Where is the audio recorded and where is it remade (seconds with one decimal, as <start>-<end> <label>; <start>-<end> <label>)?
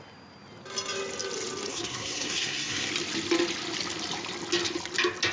0.0-1.7 recorded; 1.7-2.9 remade; 2.9-5.3 recorded